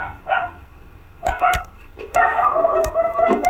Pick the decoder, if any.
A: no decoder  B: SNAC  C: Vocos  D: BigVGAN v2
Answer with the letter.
B